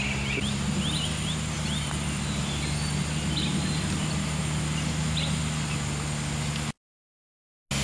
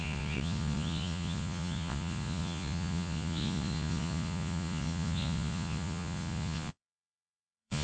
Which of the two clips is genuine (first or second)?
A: first